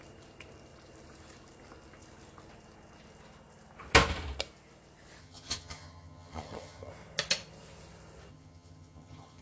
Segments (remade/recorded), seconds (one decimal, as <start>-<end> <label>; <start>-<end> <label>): 0.0-5.2 recorded; 5.2-6.9 remade; 6.9-8.3 recorded; 8.3-9.4 remade